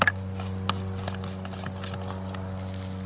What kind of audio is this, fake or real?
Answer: real